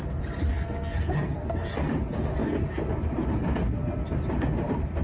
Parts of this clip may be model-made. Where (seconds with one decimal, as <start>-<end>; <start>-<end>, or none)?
0.5-1.9